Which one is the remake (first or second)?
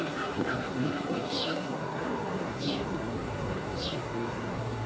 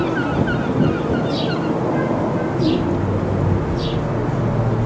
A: first